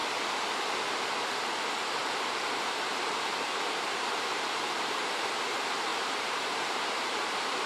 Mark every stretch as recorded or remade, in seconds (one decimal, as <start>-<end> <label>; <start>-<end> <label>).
0.0-2.3 recorded; 2.3-7.7 remade